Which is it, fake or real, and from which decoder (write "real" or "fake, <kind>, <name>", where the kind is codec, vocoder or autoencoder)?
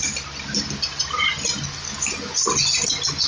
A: real